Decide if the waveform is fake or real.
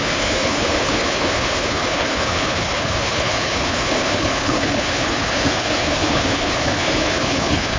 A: fake